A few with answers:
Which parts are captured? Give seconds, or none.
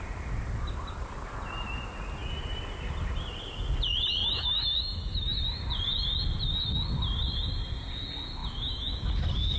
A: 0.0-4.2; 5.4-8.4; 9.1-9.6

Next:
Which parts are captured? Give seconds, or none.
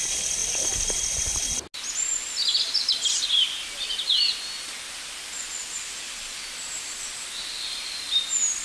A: 0.0-5.6; 6.7-8.6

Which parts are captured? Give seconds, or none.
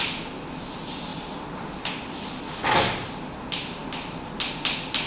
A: 0.0-5.1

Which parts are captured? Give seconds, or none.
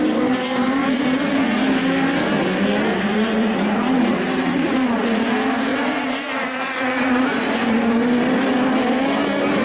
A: 0.0-0.8; 1.6-2.9; 5.3-5.7; 7.7-9.6